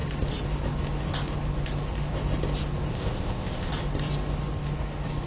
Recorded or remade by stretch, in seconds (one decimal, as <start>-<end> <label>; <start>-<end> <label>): 0.0-2.9 recorded; 2.9-3.7 remade; 3.7-5.3 recorded